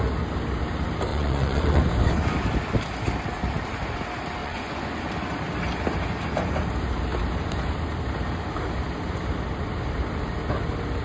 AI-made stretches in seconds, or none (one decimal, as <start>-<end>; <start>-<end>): 1.1-1.8; 4.4-5.1